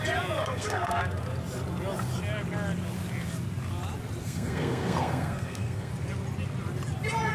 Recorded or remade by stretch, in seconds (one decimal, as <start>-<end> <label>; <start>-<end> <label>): 0.0-0.4 recorded; 0.4-1.0 remade; 1.0-4.2 recorded; 4.2-5.9 remade; 5.9-7.3 recorded